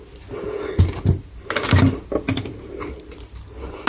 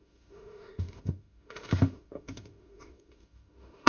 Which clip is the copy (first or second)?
second